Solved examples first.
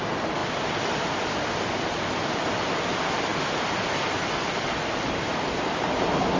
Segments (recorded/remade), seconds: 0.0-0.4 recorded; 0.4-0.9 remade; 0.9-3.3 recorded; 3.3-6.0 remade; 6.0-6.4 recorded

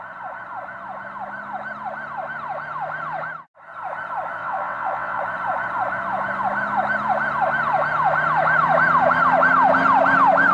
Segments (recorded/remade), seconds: 0.0-4.4 recorded; 4.4-5.2 remade; 5.2-10.5 recorded

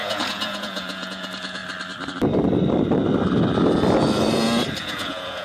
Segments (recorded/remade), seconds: 0.0-1.6 remade; 1.6-4.8 recorded; 4.8-5.4 remade